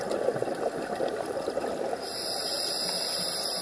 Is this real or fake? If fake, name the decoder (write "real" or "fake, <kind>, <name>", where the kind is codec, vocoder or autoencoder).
real